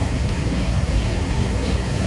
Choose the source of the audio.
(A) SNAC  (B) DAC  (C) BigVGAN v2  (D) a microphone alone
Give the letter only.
A